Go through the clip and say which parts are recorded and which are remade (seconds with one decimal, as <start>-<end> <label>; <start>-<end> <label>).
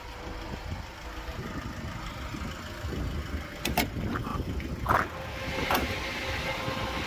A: 0.0-7.1 recorded